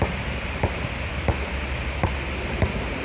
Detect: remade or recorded recorded